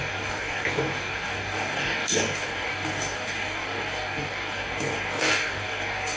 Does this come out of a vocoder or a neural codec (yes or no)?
yes